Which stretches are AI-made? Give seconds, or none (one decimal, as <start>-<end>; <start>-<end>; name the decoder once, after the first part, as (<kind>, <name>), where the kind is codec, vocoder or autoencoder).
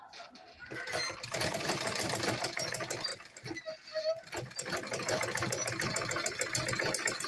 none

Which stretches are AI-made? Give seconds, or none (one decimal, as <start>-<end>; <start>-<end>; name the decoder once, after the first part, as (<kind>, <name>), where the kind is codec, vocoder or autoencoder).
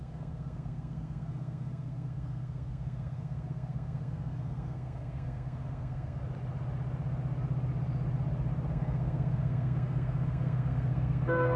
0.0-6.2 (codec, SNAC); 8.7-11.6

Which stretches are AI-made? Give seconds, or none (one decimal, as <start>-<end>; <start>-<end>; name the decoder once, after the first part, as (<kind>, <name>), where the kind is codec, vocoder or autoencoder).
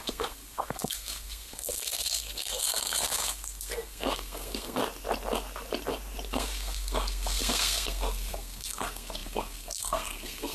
0.0-4.8 (codec, SNAC); 6.3-10.5